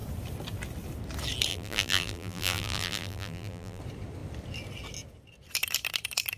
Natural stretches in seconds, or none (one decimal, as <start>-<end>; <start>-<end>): 0.0-1.5; 3.8-6.4